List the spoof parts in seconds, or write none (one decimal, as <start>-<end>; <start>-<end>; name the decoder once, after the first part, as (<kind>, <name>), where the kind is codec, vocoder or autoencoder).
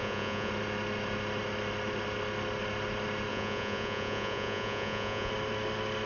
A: 0.0-0.5 (vocoder, Vocos); 3.3-5.3